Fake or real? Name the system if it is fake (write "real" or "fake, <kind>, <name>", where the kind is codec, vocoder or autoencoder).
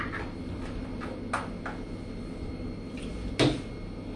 real